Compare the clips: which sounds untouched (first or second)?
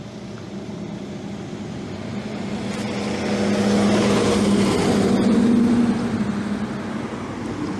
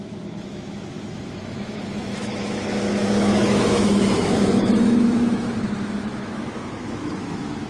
first